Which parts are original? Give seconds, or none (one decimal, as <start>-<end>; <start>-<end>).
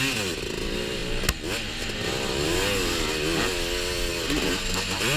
0.0-5.2